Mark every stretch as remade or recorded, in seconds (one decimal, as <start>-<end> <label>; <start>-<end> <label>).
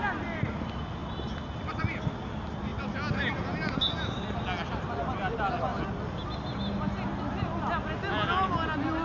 0.0-9.0 recorded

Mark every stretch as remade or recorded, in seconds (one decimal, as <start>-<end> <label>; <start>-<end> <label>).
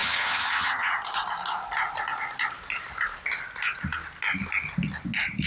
0.0-0.9 remade; 0.9-5.5 recorded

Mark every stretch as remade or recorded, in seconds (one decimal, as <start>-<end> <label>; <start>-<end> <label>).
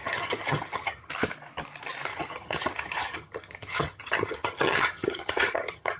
0.0-1.1 remade; 1.1-2.1 recorded; 2.1-6.0 remade